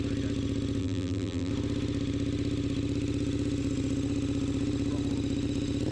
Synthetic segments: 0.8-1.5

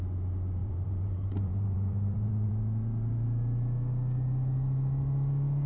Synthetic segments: 0.6-2.5